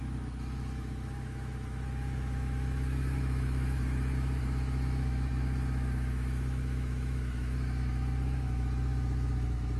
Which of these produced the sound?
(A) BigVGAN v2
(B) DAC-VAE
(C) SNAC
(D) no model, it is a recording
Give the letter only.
B